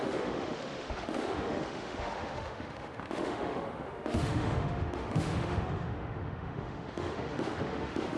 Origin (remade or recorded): remade